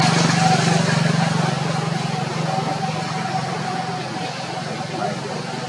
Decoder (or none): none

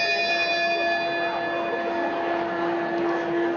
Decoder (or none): none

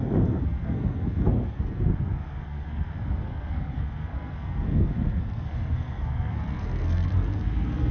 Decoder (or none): codec, SNAC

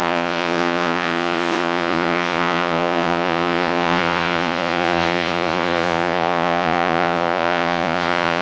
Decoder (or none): vocoder, Vocos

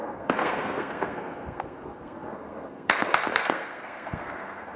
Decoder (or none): codec, SNAC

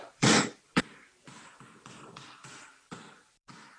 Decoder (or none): vocoder, BigVGAN v2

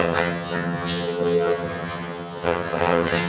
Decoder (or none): vocoder, HiFi-GAN